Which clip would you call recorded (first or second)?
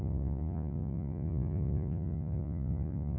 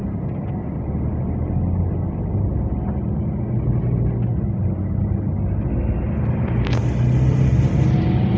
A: second